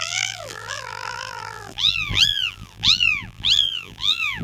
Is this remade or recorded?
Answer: remade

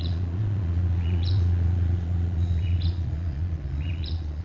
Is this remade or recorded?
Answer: remade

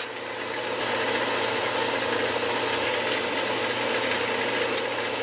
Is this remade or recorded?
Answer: recorded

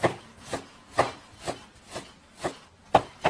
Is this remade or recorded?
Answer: recorded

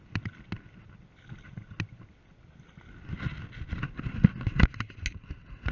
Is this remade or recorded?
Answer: recorded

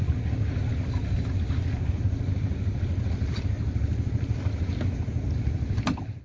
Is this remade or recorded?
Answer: recorded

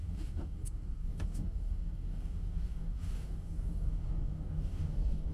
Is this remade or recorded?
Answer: remade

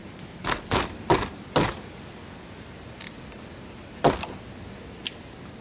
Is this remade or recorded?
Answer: recorded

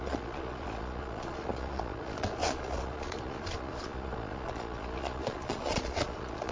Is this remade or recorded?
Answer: remade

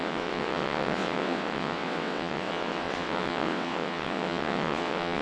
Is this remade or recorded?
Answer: remade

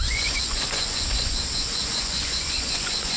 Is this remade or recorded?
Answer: remade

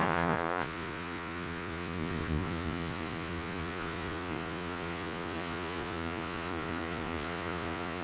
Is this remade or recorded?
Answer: remade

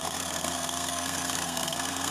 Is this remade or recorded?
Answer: remade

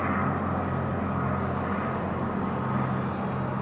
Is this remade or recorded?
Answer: recorded